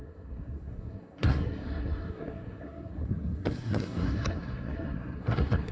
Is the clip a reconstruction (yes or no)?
yes